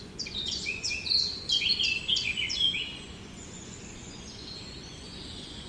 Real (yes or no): no